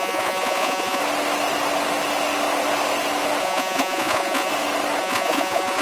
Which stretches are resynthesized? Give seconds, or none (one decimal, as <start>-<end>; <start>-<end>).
0.0-1.0; 3.4-4.5; 5.0-5.8